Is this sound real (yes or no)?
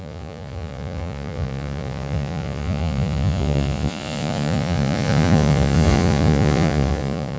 no